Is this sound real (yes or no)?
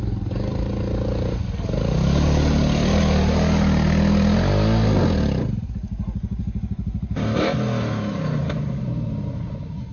yes